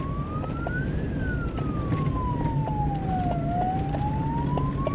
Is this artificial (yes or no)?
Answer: no